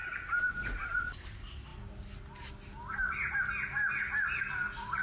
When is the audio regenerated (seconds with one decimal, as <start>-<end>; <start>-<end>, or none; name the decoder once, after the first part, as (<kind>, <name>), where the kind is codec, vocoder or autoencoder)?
none